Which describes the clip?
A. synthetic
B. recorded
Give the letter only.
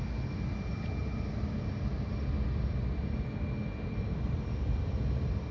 B